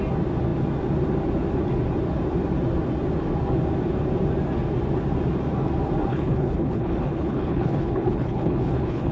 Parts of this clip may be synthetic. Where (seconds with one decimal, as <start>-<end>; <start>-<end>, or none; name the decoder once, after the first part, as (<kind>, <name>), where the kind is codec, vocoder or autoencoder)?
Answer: 6.1-9.1 (codec, HILCodec)